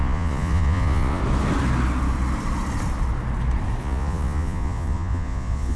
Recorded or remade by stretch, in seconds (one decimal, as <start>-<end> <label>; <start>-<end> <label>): 0.0-1.2 remade; 1.2-3.8 recorded; 3.8-5.8 remade